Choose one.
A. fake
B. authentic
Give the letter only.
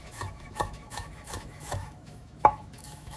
A